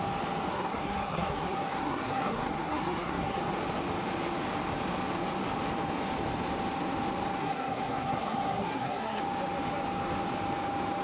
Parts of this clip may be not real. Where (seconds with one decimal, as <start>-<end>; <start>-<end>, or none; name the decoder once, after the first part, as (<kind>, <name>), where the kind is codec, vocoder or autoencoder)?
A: 0.5-3.4 (codec, SNAC); 7.4-9.2